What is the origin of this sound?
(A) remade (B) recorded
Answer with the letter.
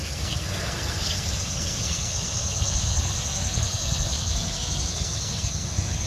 A